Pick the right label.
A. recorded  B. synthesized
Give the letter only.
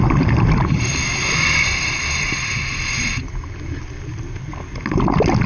A